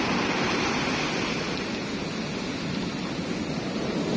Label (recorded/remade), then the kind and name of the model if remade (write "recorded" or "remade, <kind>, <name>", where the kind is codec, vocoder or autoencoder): recorded